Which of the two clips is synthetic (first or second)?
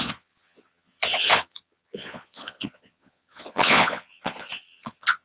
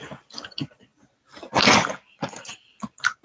first